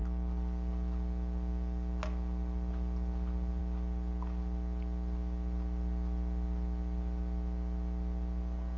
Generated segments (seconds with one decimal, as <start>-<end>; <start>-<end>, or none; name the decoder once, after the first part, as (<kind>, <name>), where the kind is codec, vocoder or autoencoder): none